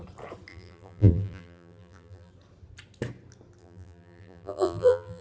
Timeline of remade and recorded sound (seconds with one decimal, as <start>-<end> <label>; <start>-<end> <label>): 0.0-0.5 recorded; 0.5-2.3 remade; 2.3-3.6 recorded; 3.6-5.2 remade